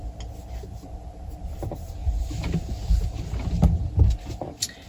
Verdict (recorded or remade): recorded